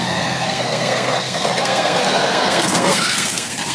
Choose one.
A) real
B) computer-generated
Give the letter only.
B